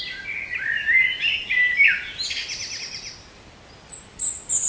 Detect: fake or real real